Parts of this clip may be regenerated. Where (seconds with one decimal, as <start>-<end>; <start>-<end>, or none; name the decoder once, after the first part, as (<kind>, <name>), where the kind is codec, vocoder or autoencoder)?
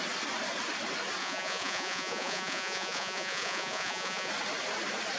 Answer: 1.2-4.3 (vocoder, Vocos)